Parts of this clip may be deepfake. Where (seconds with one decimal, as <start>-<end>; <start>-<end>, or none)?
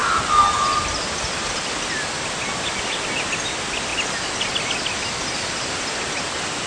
none